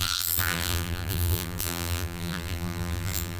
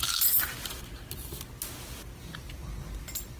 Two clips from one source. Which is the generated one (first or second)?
first